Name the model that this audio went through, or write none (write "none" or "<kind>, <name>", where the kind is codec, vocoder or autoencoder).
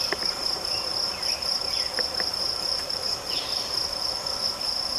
vocoder, BigVGAN v2